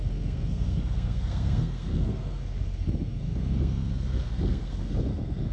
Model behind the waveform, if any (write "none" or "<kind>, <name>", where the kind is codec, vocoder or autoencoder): codec, SNAC